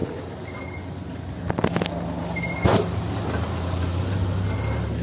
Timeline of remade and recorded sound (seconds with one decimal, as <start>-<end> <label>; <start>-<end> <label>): 0.0-5.0 recorded